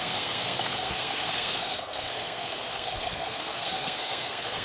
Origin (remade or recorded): remade